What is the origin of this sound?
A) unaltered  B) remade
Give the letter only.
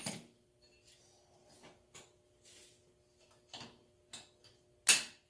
A